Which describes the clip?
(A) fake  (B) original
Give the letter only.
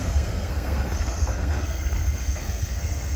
A